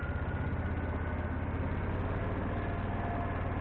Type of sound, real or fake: real